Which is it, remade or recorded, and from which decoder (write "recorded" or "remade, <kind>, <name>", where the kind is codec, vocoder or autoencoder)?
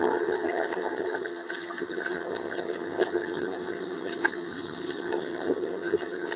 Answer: remade, vocoder, HiFi-GAN